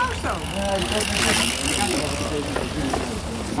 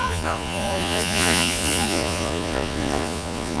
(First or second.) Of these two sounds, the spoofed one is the second